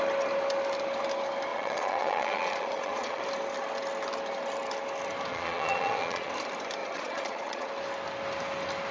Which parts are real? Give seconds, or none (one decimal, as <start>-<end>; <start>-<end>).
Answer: 0.0-1.5; 3.2-5.3; 6.3-6.8; 7.7-8.9